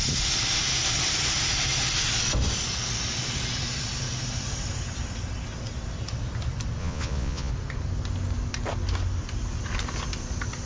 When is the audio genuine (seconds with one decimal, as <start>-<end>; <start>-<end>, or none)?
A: 0.0-6.8; 7.5-10.7